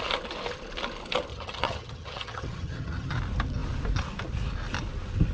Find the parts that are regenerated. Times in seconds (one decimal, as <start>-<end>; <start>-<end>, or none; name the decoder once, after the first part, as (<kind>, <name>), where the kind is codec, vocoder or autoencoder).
1.3-3.2 (vocoder, HiFi-GAN)

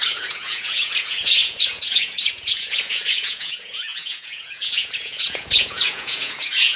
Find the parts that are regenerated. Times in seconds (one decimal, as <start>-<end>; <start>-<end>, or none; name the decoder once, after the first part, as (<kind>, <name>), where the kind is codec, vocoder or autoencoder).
0.0-6.8 (vocoder, Vocos)

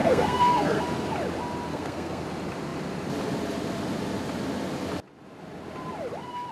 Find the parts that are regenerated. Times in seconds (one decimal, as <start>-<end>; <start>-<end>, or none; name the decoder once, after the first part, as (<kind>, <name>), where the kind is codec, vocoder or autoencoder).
0.0-0.8 (codec, SNAC); 1.7-2.2

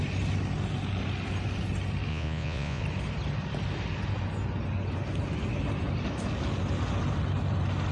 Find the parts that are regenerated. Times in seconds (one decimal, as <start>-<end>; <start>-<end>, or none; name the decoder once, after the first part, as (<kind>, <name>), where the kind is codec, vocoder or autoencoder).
2.1-2.8 (vocoder, Vocos)

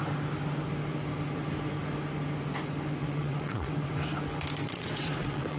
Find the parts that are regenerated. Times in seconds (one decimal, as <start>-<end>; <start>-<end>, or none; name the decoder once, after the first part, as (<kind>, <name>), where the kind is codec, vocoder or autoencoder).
3.0-3.9 (vocoder, WaveNeXt); 4.6-5.6